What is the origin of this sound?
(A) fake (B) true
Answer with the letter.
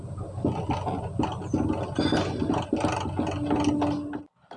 B